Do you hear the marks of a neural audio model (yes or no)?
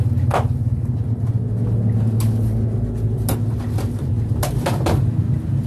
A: no